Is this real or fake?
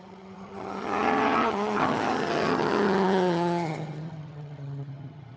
fake